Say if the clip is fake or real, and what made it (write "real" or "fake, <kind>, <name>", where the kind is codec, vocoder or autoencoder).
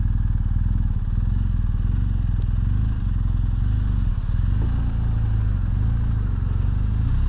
real